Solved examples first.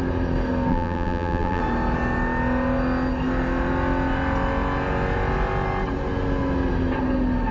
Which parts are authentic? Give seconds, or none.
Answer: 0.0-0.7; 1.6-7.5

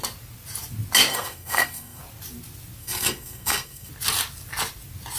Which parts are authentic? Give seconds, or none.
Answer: 0.0-1.1; 2.0-2.8; 3.9-5.2

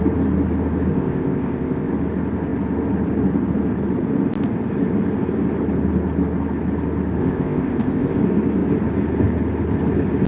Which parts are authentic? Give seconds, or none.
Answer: 0.0-0.9; 1.9-7.2; 8.2-10.3

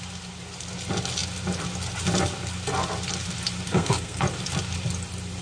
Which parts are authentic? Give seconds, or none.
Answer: 0.0-3.7; 4.2-5.4